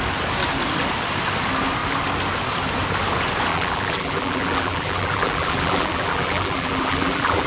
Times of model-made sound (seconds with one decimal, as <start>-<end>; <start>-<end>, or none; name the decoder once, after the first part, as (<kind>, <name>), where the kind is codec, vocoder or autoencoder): 3.5-7.5 (vocoder, BigVGAN v2)